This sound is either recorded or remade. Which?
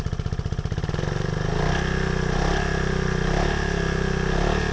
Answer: recorded